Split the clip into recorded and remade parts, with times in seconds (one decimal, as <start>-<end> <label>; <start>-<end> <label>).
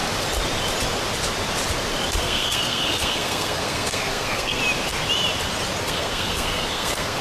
0.0-2.2 recorded; 2.2-4.6 remade; 4.6-5.8 recorded; 5.8-7.2 remade